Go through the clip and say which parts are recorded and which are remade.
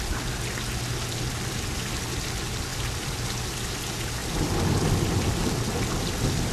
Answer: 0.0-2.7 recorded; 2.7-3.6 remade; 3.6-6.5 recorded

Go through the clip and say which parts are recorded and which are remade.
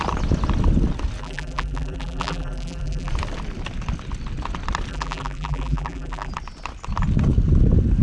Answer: 0.0-1.2 recorded; 1.2-3.1 remade; 3.1-4.9 recorded; 4.9-6.3 remade; 6.3-8.0 recorded